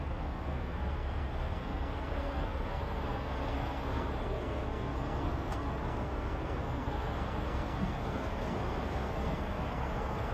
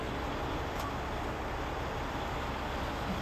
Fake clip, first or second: first